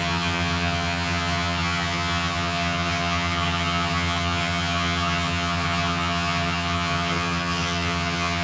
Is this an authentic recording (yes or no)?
no